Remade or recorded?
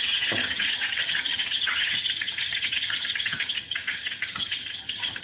remade